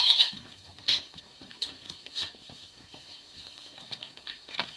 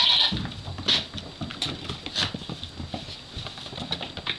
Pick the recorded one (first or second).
second